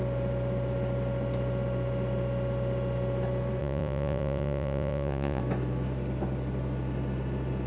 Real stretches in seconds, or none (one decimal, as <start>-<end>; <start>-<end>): 0.0-3.6; 5.4-7.7